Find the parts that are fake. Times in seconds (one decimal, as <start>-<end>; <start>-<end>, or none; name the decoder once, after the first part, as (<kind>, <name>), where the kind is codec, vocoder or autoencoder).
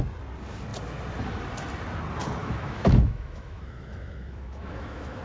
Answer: 2.4-5.2 (autoencoder, DAC-VAE)